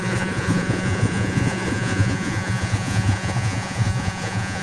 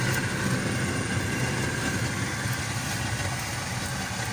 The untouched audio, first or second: second